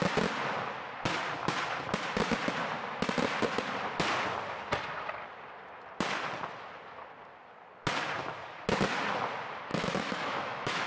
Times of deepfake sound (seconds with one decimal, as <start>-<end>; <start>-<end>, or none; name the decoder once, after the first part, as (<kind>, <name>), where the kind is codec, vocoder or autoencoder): 9.7-10.9 (autoencoder, DAC-VAE)